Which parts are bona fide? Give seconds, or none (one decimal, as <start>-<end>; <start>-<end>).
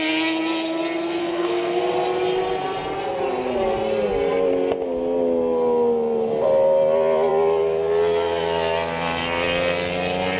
0.0-1.2; 1.8-10.4